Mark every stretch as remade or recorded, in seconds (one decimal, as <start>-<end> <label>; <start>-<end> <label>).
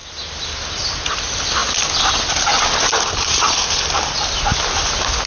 0.0-0.7 recorded; 0.7-1.6 remade; 1.6-4.8 recorded; 4.8-5.3 remade